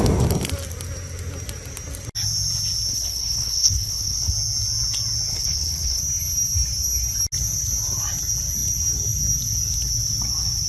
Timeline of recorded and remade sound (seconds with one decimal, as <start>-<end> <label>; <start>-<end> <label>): 0.0-2.9 recorded; 2.9-4.3 remade; 4.3-5.3 recorded; 5.3-6.0 remade; 6.0-10.7 recorded